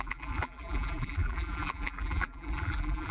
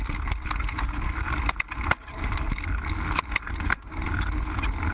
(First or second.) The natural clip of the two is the second